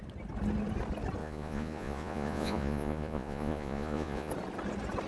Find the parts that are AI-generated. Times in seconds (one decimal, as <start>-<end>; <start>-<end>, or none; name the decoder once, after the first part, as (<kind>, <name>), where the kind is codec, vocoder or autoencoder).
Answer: 1.2-4.3 (vocoder, Vocos)